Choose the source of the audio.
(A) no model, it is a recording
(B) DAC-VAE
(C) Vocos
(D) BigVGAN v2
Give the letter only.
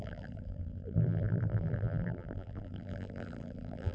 D